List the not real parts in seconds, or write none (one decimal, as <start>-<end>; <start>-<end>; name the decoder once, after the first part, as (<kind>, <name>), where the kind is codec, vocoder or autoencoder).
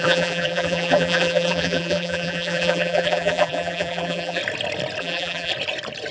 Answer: 0.0-4.4 (vocoder, BigVGAN v2); 5.0-5.5